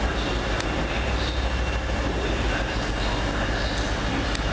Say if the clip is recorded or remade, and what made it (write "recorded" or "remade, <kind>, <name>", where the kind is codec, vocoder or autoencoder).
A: recorded